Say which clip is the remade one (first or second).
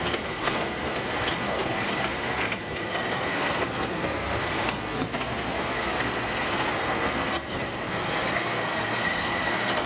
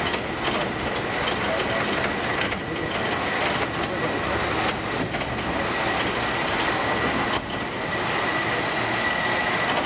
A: first